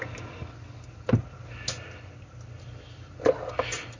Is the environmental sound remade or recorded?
recorded